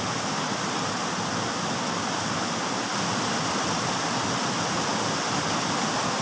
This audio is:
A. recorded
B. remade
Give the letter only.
A